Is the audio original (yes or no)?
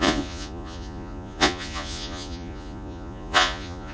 no